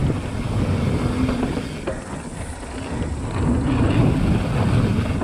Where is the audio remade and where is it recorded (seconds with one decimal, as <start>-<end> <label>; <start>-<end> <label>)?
0.0-5.2 recorded